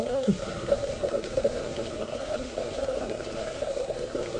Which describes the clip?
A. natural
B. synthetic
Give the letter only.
B